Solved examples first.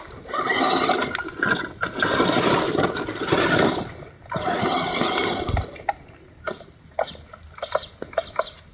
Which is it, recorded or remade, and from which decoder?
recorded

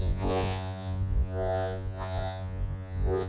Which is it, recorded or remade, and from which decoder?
remade, vocoder, Vocos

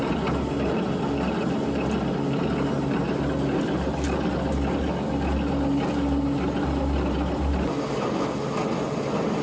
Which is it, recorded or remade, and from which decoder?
recorded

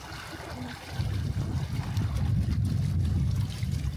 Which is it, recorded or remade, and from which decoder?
recorded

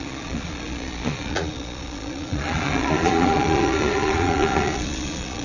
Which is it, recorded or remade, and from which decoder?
remade, vocoder, Vocos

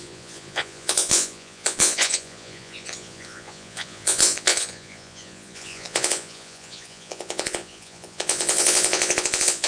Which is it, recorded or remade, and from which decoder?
remade, vocoder, Vocos